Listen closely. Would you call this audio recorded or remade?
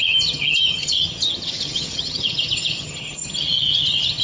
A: remade